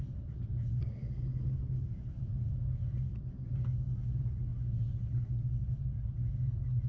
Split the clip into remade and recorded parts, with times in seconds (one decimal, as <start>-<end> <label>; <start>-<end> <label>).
0.0-6.9 recorded